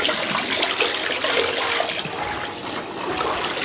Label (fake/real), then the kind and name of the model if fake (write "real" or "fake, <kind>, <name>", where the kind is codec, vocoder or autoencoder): real